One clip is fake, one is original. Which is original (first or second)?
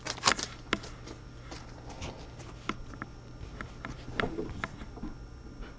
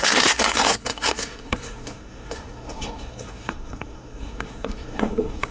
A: first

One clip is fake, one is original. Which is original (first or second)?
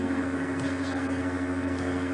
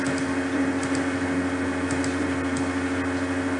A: second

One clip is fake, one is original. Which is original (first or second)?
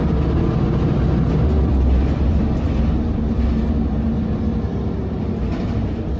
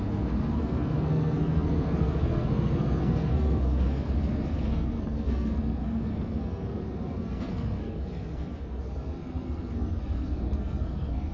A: first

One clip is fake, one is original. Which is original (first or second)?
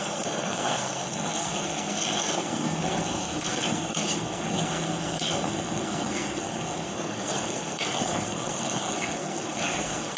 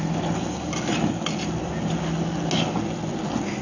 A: second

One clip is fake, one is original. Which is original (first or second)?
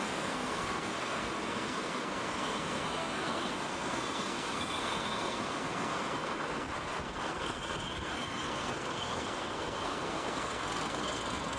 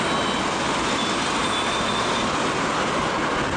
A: second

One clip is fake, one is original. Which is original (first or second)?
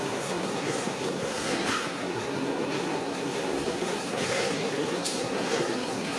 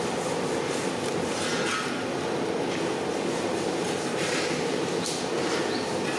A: second